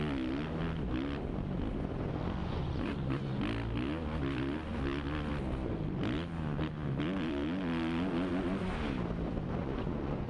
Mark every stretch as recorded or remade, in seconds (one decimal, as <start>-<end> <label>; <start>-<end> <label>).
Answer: 0.0-2.4 recorded; 2.4-3.4 remade; 3.4-9.6 recorded; 9.6-10.3 remade